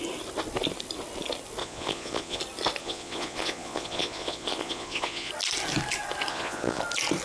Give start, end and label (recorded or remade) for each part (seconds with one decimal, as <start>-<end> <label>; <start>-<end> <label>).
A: 0.0-1.6 recorded; 1.6-2.4 remade; 2.4-2.8 recorded; 2.8-5.3 remade; 5.3-6.3 recorded; 6.3-6.8 remade; 6.8-7.2 recorded